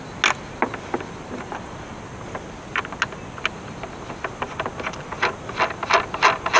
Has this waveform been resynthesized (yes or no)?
no